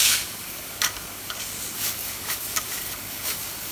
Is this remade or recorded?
remade